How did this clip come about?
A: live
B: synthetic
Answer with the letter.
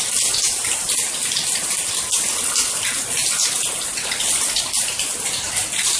A